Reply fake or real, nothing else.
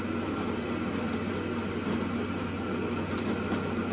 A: real